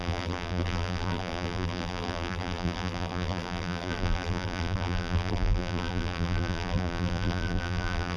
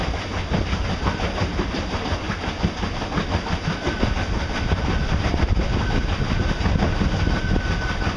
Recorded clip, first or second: second